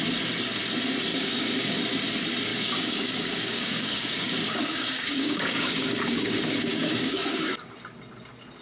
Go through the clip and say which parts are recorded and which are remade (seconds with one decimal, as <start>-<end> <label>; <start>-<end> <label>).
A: 0.0-1.1 recorded; 1.1-1.8 remade; 1.8-2.5 recorded; 2.5-7.7 remade; 7.7-8.6 recorded